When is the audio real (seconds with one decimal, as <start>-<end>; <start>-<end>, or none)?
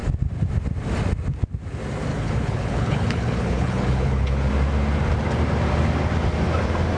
0.0-2.1; 4.5-7.0